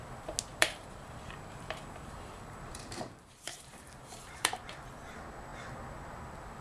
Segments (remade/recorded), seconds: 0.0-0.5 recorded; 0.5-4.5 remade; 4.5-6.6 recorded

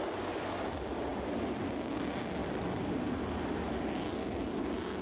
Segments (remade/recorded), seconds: 0.0-2.4 recorded; 2.4-3.1 remade; 3.1-5.0 recorded